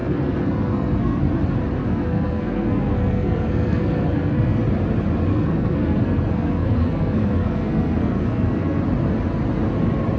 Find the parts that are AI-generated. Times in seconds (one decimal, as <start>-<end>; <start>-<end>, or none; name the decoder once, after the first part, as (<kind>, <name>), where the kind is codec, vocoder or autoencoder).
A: 0.0-1.2 (codec, SNAC); 1.8-4.6; 5.3-8.8